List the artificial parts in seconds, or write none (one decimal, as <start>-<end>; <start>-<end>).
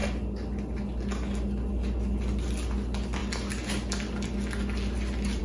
none